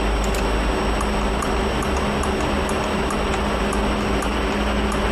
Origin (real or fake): real